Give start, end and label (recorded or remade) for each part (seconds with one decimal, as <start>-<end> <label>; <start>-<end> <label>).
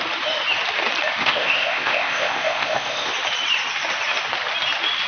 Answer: 0.0-1.2 recorded; 1.2-3.1 remade; 3.1-5.1 recorded